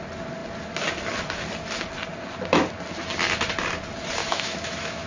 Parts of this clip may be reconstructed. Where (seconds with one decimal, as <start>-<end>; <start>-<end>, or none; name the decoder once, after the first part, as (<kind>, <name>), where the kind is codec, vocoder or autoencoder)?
4.2-5.1 (autoencoder, DAC-VAE)